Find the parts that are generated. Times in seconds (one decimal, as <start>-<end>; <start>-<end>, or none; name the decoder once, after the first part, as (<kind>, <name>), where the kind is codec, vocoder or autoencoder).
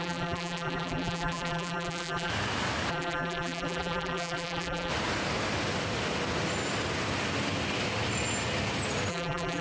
0.0-2.3 (vocoder, BigVGAN v2); 2.9-4.9; 9.1-9.6